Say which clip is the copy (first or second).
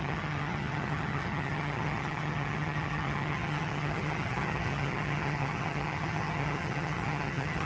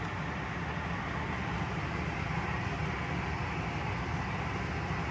first